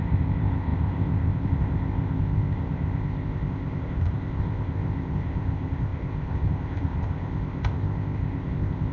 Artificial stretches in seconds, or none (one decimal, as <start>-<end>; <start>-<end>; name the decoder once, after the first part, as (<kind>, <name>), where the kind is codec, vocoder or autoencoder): 0.0-8.9 (codec, ZipCodec)